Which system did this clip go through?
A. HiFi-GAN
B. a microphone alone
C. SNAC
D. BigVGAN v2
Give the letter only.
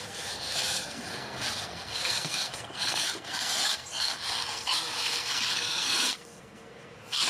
C